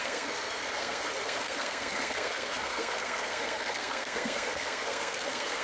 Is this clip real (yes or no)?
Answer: no